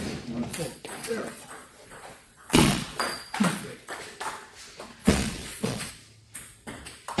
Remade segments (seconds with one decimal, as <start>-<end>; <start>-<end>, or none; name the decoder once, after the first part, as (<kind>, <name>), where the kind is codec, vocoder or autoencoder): 0.5-3.9 (vocoder, Vocos); 5.0-5.9